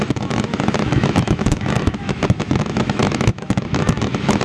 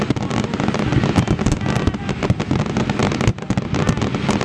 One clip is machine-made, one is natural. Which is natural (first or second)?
second